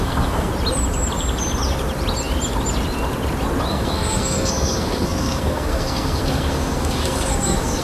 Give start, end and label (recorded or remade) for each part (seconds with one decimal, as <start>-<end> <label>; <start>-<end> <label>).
0.0-0.5 remade; 0.5-3.7 recorded; 3.7-7.8 remade